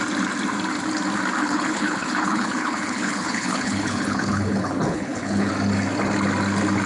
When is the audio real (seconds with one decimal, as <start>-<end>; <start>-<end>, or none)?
0.0-1.4; 5.5-6.9